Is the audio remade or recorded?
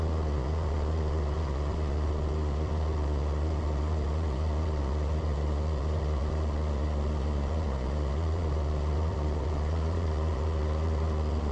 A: remade